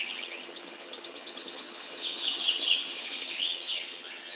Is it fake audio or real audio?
fake